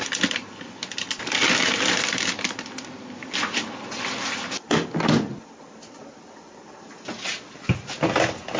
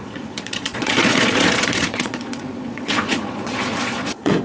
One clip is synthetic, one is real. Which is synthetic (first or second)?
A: second